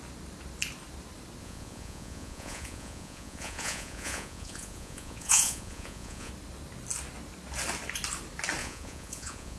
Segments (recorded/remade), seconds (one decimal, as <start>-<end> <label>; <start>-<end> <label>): 0.0-1.4 recorded; 1.4-6.3 remade; 6.3-8.6 recorded; 8.6-9.6 remade